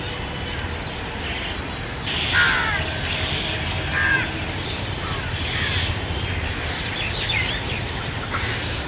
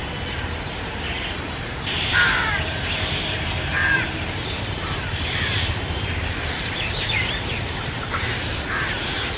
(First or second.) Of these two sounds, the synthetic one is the second